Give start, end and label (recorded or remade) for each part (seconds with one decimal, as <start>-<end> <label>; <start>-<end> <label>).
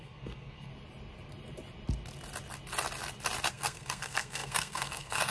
0.0-0.7 remade; 0.7-3.5 recorded; 3.5-5.3 remade